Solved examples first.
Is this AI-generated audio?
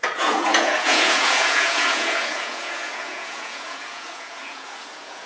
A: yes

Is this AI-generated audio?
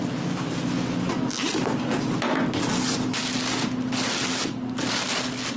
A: no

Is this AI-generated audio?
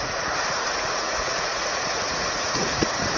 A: yes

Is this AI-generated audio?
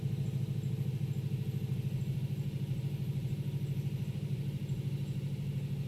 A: no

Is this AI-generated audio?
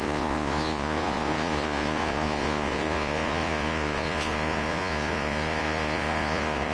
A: yes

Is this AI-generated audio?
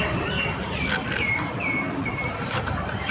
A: no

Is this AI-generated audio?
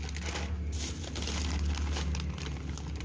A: no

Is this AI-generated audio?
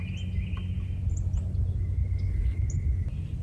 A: no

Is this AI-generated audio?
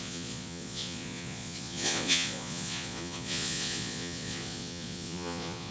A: yes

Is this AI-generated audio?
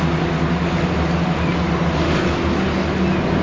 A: no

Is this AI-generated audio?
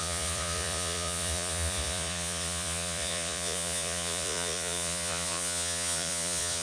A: yes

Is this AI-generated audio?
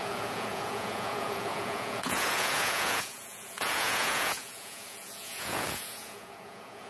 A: yes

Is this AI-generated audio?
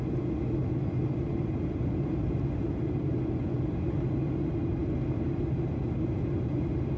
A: no